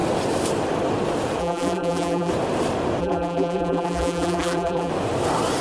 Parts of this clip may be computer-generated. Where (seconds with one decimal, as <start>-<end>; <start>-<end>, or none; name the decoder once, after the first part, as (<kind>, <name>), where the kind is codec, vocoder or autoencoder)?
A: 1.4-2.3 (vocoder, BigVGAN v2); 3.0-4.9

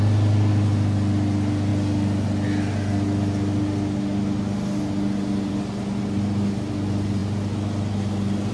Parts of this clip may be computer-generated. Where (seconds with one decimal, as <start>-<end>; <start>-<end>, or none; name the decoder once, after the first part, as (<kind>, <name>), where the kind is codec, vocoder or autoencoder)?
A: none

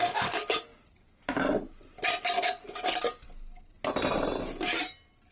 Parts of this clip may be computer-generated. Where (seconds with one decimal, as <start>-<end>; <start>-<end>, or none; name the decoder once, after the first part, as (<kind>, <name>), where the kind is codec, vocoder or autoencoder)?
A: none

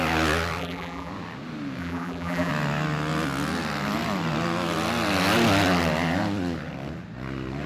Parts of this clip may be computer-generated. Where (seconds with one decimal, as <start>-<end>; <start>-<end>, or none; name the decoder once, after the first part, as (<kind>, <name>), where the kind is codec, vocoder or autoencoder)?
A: 0.6-1.1 (vocoder, BigVGAN v2); 1.8-2.5

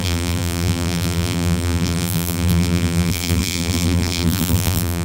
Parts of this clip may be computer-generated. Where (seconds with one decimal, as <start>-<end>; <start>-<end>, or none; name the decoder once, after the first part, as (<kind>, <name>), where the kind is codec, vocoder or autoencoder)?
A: 0.0-5.0 (vocoder, BigVGAN v2)

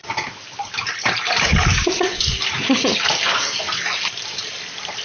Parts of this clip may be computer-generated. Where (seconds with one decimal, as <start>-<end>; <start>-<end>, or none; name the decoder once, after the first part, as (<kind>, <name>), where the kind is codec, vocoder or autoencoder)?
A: 0.0-1.5 (vocoder, BigVGAN v2); 4.5-5.0

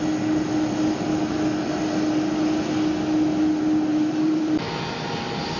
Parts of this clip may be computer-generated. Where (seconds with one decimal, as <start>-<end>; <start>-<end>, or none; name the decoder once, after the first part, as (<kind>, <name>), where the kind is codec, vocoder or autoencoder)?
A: 3.9-4.7 (vocoder, BigVGAN v2)

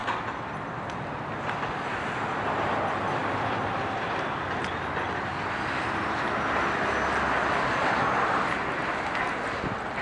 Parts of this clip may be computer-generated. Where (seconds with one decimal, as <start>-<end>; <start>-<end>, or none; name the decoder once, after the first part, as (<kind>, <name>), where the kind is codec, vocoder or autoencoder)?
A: none